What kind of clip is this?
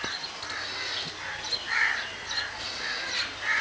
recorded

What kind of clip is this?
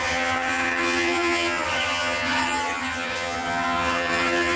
remade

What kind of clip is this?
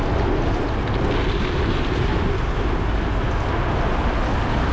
recorded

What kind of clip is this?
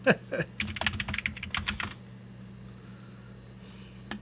recorded